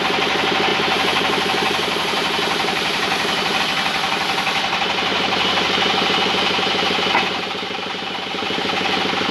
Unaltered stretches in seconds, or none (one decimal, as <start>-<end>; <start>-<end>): 0.0-0.7; 3.6-5.1; 8.6-9.3